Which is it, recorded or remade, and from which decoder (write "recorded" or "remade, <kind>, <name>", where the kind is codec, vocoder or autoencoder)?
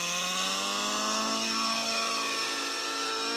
recorded